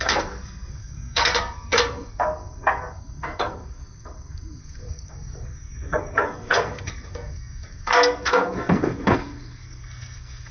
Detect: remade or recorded remade